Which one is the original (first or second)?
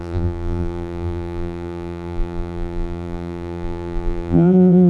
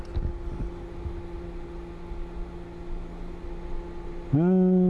second